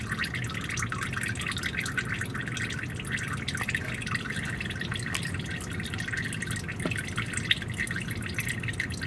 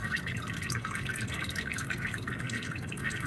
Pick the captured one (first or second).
first